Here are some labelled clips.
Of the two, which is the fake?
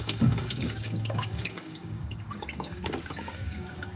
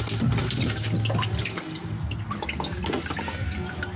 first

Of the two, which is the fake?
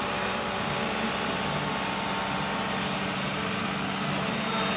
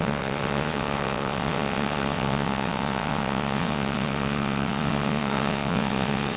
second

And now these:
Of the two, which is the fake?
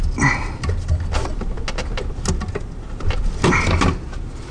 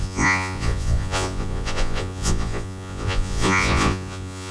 second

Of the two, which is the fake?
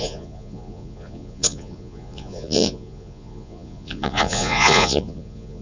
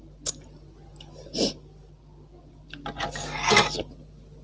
first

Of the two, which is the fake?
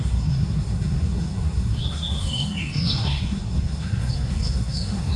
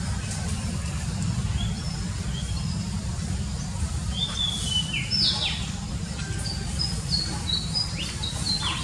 first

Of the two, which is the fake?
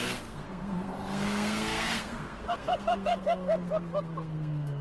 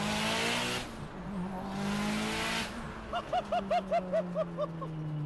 first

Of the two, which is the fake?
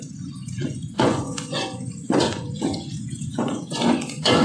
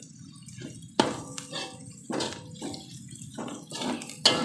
first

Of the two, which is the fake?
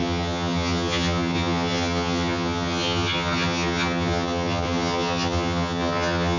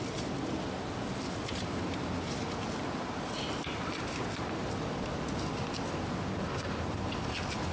first